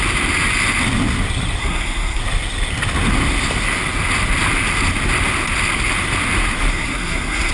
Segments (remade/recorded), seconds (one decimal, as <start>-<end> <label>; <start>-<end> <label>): 0.0-1.6 recorded; 1.6-2.2 remade; 2.2-6.7 recorded; 6.7-7.5 remade